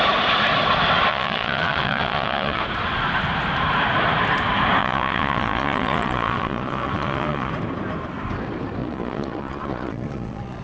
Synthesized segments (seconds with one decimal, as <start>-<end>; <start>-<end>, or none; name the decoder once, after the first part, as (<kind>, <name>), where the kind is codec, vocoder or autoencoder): 1.1-2.6 (vocoder, Vocos); 4.8-7.5; 8.8-10.6